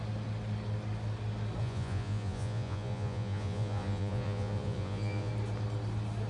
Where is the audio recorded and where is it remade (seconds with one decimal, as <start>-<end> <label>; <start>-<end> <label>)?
0.0-1.6 recorded; 1.6-5.3 remade; 5.3-6.3 recorded